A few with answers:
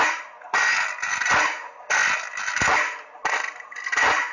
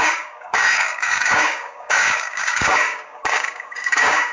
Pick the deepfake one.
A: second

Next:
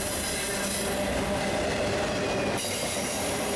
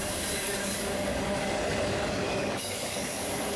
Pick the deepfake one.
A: second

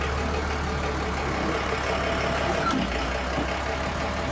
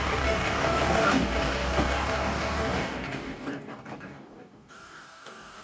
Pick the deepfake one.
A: second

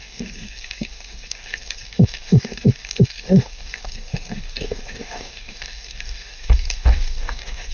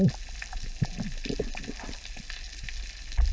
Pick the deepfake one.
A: first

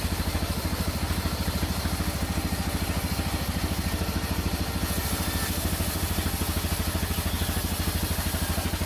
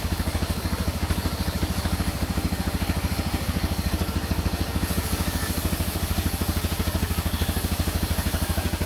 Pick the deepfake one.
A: second